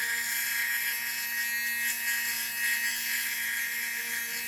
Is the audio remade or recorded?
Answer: recorded